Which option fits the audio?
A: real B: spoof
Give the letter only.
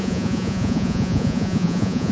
B